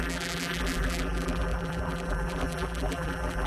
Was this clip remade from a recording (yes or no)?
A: yes